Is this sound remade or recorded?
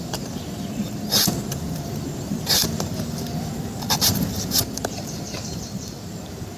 remade